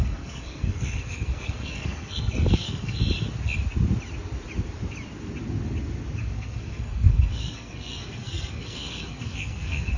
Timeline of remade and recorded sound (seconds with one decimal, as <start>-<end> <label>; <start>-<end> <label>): 0.0-3.0 remade; 3.0-6.2 recorded; 6.2-10.0 remade